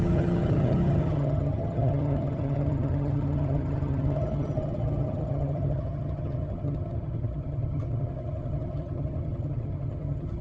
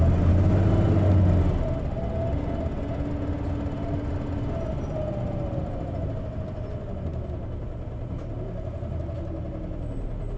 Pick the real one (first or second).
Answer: second